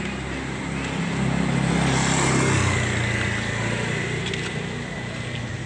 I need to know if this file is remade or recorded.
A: recorded